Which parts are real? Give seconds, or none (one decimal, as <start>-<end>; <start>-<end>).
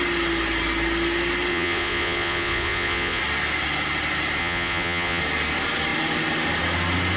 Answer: 0.0-1.5; 3.2-4.4; 5.2-7.2